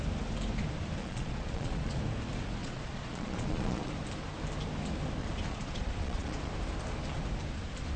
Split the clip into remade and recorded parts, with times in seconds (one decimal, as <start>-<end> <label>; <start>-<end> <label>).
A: 0.0-1.0 recorded; 1.0-2.0 remade; 2.0-2.6 recorded; 2.6-3.9 remade; 3.9-5.2 recorded; 5.2-6.5 remade; 6.5-8.0 recorded